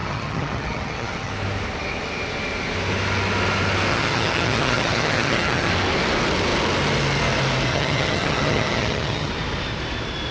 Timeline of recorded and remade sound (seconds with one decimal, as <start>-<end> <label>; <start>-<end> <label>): 0.0-1.3 remade; 1.3-3.9 recorded; 3.9-5.7 remade; 5.7-7.7 recorded; 7.7-9.3 remade; 9.3-10.3 recorded